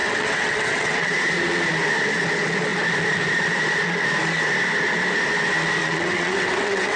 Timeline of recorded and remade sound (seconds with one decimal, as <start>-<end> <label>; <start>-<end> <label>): 0.0-1.1 remade; 1.1-5.8 recorded; 5.8-7.0 remade